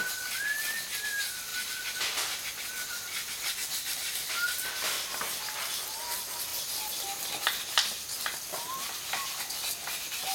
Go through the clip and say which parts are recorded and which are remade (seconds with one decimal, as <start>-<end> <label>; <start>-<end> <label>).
0.0-10.3 recorded